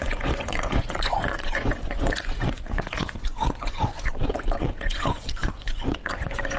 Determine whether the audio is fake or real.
fake